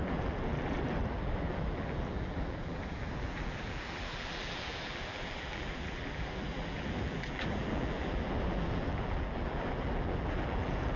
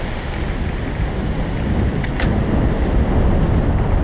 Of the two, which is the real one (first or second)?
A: second